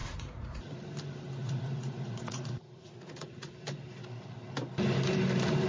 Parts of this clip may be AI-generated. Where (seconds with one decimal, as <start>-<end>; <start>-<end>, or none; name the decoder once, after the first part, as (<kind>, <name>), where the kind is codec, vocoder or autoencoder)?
0.0-0.7 (vocoder, Vocos); 1.4-3.5